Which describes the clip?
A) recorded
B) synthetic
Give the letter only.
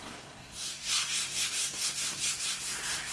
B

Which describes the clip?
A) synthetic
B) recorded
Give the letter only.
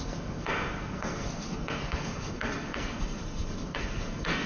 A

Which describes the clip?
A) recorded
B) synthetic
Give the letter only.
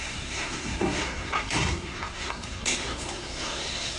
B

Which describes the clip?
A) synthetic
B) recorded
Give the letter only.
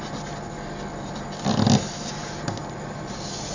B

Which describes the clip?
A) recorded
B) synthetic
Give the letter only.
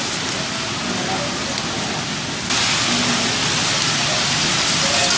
A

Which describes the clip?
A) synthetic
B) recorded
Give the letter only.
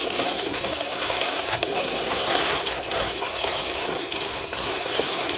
A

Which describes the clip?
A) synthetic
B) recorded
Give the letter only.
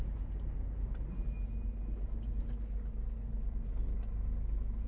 B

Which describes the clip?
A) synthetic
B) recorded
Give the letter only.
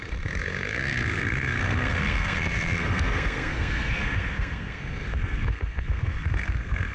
A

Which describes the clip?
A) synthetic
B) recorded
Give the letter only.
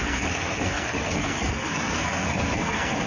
A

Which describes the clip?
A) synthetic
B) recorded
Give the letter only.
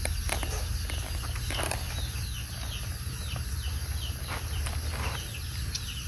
B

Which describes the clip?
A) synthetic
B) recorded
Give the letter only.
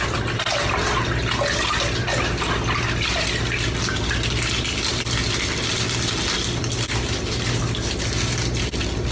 B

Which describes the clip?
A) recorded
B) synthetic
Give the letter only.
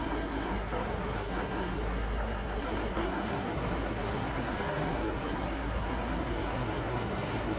B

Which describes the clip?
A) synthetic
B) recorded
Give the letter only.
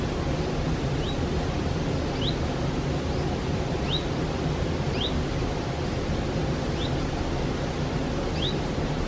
B